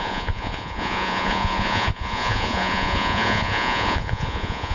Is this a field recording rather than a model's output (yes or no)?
no